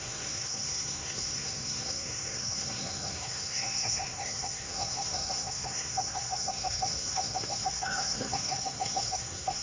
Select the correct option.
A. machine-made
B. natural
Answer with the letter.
A